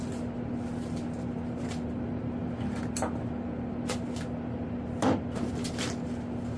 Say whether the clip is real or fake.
real